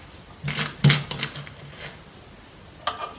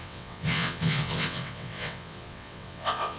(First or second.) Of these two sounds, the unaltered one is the first